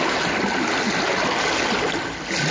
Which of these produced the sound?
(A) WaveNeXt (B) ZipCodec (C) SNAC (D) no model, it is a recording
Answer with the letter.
D